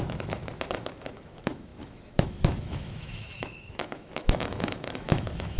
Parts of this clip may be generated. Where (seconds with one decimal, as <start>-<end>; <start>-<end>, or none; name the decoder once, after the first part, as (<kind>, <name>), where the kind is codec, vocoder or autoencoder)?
0.0-0.4 (autoencoder, DAC-VAE); 0.9-5.6